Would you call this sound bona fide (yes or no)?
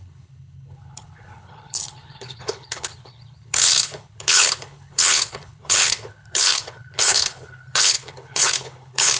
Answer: no